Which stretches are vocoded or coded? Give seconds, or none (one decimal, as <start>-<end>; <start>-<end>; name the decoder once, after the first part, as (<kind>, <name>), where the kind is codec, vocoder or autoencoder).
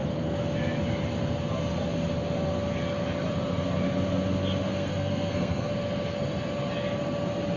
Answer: 4.7-5.7 (codec, SNAC)